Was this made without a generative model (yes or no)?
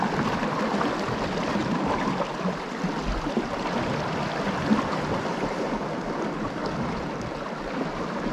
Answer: yes